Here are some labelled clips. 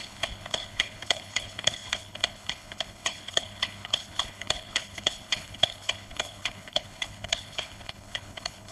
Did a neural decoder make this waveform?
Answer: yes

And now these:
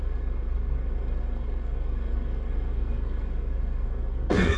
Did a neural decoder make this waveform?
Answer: yes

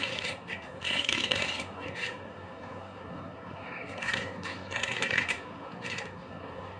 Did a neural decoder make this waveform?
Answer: yes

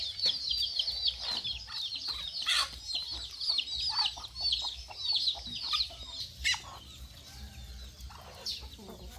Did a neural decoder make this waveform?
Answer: no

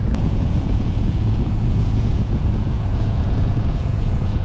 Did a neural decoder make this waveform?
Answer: yes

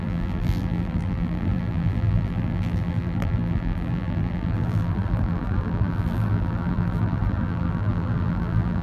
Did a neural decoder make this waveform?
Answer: yes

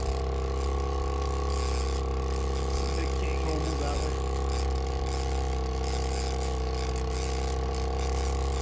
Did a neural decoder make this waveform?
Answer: no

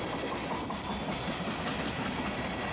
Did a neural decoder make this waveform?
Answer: no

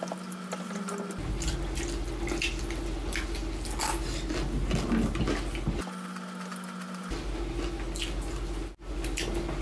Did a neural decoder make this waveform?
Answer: no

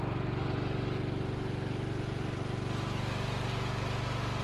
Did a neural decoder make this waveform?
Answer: no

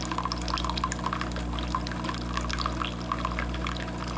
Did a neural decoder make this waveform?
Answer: no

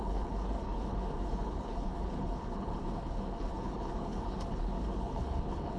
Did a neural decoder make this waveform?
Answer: yes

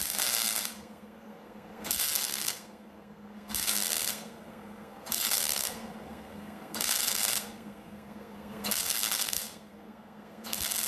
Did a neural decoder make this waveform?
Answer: yes